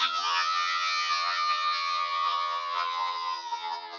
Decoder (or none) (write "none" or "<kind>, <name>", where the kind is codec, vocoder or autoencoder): vocoder, HiFi-GAN